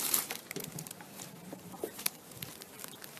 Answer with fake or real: fake